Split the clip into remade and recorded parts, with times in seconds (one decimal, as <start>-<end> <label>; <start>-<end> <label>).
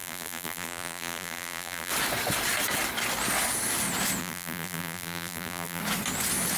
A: 0.0-1.9 remade; 1.9-4.2 recorded; 4.2-5.8 remade; 5.8-6.6 recorded